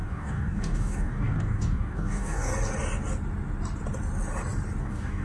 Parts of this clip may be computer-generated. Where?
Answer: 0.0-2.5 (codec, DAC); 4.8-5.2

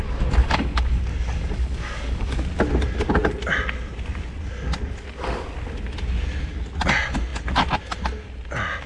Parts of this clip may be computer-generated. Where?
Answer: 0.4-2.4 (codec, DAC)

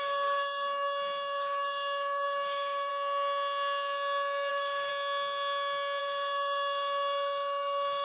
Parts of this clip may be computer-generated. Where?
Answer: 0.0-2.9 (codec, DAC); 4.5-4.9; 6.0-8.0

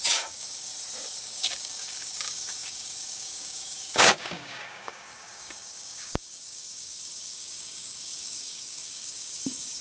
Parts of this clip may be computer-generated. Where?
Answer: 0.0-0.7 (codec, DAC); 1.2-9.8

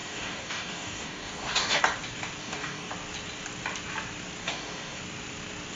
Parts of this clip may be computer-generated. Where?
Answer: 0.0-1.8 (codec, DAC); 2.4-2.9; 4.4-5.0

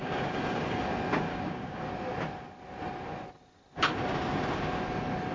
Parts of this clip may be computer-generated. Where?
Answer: 0.0-0.8 (codec, DAC); 1.3-1.8

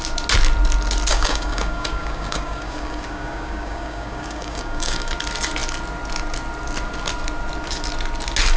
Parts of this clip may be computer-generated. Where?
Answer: 1.1-5.1 (codec, DAC)